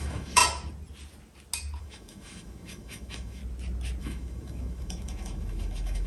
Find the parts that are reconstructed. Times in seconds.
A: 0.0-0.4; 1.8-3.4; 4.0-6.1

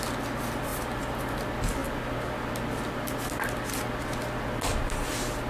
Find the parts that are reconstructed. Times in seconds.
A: none

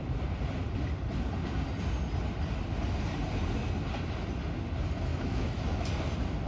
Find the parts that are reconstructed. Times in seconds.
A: 5.1-5.9

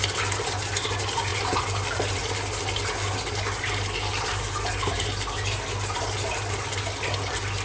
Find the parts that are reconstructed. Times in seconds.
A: none

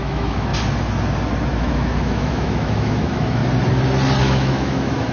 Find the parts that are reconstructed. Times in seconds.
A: 0.0-0.5; 1.6-3.4; 4.2-5.1

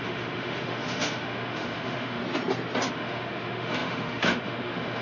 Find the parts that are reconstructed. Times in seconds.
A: 0.0-2.2; 2.9-5.0